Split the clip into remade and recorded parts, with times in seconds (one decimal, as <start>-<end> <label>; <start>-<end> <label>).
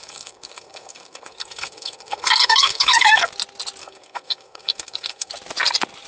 0.0-3.3 remade; 3.3-3.8 recorded; 3.8-5.3 remade; 5.3-6.1 recorded